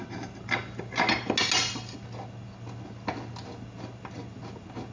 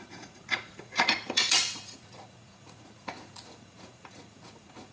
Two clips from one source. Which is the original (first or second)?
first